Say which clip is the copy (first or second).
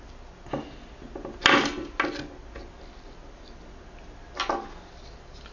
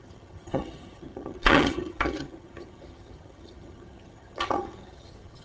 second